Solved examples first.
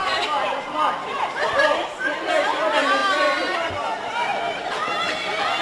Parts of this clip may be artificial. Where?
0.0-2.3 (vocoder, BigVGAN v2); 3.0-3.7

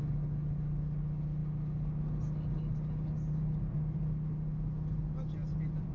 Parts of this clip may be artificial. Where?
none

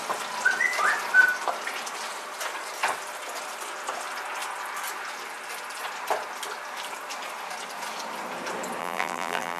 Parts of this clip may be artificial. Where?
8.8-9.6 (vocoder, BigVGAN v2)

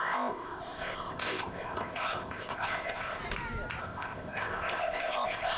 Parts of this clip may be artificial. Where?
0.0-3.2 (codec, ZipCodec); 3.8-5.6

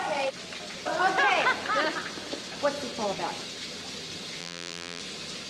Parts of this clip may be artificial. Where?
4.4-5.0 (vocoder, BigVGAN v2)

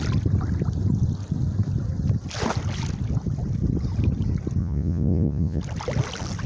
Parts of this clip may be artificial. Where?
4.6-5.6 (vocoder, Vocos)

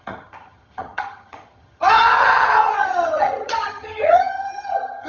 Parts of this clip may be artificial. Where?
0.0-5.1 (vocoder, HiFi-GAN)

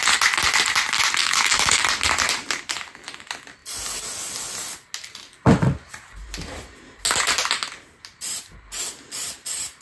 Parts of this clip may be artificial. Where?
1.2-1.8 (autoencoder, DAC-VAE)